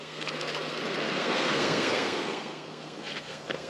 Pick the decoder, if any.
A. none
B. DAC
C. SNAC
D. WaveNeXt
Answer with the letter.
C